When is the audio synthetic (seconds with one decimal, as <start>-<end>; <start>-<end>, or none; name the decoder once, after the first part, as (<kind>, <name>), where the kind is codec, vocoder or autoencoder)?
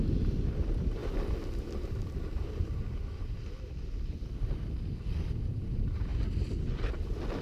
none